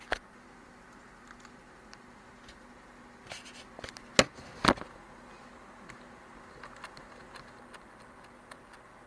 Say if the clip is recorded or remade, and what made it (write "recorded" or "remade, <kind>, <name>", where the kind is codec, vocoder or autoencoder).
recorded